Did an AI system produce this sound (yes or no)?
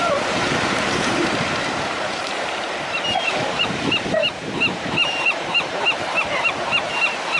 yes